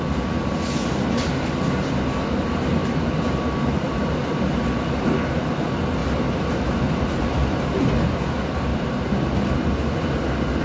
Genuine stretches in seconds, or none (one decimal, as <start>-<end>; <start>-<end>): 0.0-6.0; 7.9-8.7; 9.9-10.6